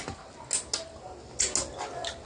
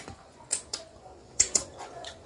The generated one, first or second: second